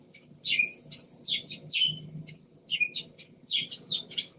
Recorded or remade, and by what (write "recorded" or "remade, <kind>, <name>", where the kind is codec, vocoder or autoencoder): recorded